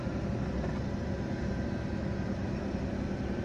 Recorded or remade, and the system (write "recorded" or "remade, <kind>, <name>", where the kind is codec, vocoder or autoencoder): recorded